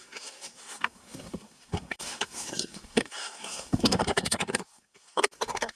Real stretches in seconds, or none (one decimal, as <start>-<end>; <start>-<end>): none